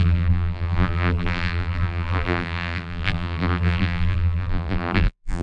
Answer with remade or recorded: remade